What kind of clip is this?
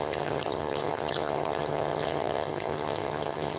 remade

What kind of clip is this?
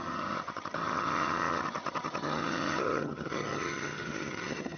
remade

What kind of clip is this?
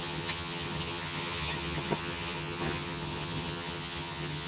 remade